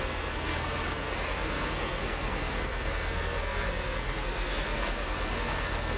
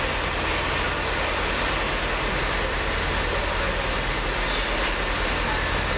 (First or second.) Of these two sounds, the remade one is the first